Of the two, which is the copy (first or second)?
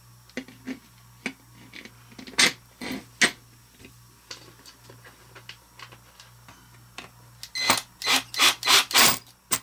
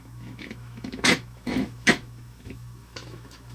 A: second